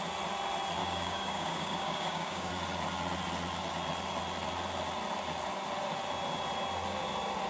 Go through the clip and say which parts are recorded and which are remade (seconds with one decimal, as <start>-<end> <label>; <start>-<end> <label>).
0.0-0.8 recorded; 0.8-2.5 remade; 2.5-7.5 recorded